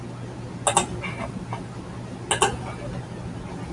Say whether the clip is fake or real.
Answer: real